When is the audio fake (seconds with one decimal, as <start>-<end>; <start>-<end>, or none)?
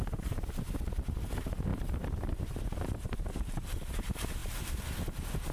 0.0-5.5